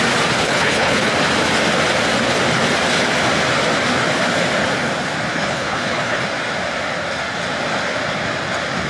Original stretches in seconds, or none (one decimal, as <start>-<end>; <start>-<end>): 0.0-0.4; 1.1-5.3; 6.2-8.9